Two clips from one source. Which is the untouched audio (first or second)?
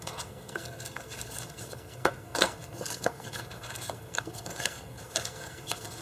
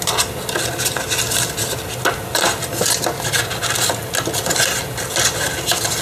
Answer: second